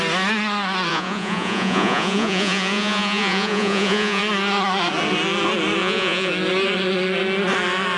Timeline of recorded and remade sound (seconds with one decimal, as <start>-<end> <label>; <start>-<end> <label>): 0.0-0.9 recorded; 0.9-4.2 remade; 4.2-5.8 recorded; 5.8-6.3 remade; 6.3-8.0 recorded